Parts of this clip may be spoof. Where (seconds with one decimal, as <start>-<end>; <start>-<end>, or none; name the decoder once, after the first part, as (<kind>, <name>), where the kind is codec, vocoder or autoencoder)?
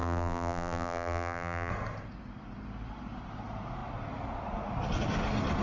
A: 0.0-1.7 (vocoder, BigVGAN v2)